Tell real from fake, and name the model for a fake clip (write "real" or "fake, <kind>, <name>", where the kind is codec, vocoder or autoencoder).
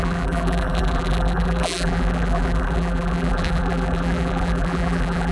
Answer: fake, vocoder, BigVGAN v2